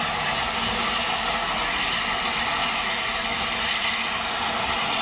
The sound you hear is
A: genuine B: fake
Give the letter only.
A